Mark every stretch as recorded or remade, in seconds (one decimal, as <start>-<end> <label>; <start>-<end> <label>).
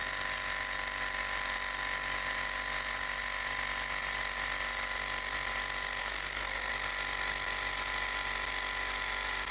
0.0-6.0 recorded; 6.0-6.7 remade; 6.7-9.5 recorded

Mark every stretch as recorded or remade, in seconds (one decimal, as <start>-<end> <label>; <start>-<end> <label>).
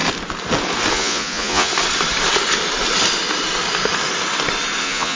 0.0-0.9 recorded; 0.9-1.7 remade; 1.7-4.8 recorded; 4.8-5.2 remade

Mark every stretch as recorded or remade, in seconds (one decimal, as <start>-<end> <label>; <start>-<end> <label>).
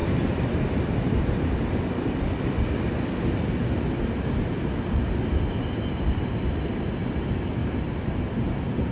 0.0-4.0 remade; 4.0-7.6 recorded; 7.6-8.2 remade; 8.2-8.9 recorded